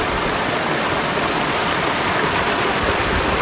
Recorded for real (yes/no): yes